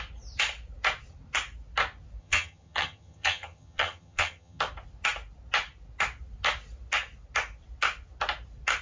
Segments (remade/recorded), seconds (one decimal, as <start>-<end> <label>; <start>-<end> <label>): 0.0-2.2 recorded; 2.2-4.6 remade; 4.6-8.8 recorded